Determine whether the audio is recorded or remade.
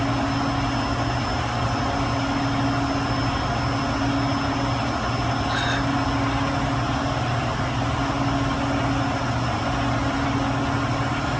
recorded